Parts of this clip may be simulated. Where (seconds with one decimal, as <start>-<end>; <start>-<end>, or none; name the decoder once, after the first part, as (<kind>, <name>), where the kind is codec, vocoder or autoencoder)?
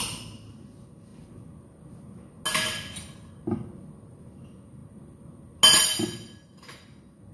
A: none